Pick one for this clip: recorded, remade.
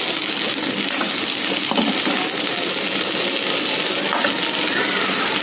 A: recorded